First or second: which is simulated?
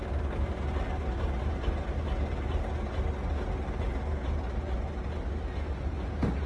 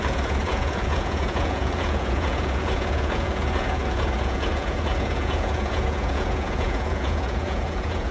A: second